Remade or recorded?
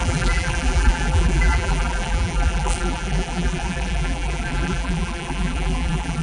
remade